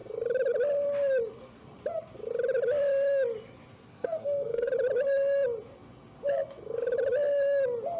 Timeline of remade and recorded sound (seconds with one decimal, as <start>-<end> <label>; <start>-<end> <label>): 0.0-3.7 recorded; 3.7-4.7 remade; 4.7-8.0 recorded